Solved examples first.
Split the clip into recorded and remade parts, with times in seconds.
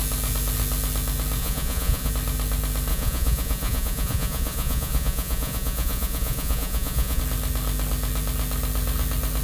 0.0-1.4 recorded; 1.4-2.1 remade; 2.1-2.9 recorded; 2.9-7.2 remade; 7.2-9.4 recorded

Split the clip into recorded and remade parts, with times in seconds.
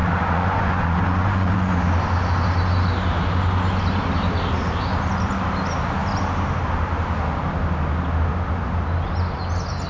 0.0-1.7 remade; 1.7-9.9 recorded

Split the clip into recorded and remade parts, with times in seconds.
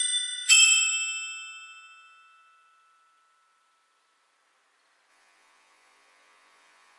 0.0-0.9 remade; 0.9-5.1 recorded; 5.1-7.0 remade